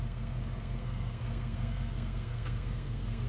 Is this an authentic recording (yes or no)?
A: no